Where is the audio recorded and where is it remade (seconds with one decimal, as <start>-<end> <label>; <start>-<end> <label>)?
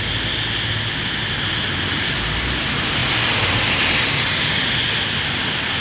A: 0.0-5.8 recorded